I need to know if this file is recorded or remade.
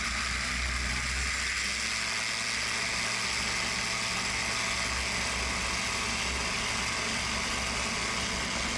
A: recorded